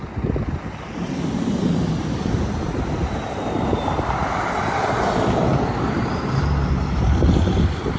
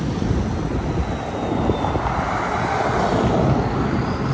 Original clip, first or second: second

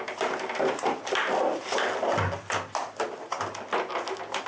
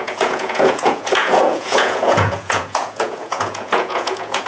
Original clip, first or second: first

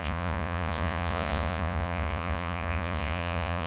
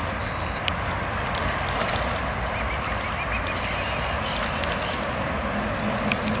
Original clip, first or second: second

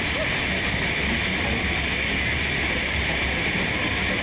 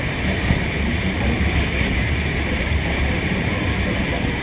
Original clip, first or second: first